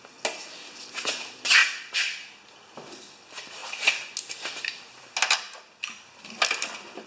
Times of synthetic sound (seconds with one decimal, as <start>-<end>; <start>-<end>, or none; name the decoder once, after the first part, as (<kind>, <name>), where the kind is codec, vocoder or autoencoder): none